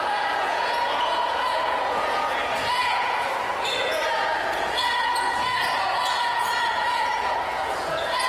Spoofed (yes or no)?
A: yes